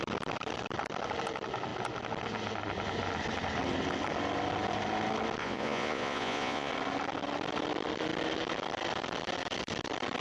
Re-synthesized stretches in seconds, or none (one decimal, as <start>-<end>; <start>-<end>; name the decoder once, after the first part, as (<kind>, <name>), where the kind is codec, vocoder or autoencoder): 5.4-6.7 (vocoder, Vocos)